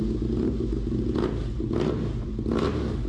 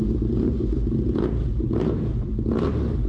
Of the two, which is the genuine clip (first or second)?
first